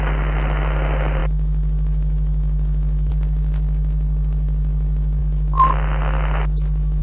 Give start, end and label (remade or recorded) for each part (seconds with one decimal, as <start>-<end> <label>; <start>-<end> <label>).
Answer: 0.0-7.0 recorded